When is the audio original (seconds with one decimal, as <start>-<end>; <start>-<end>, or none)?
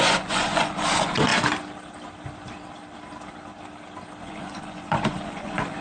1.3-4.2